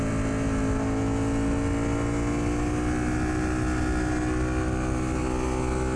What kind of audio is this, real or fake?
real